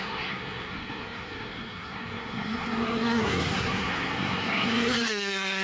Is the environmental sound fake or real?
fake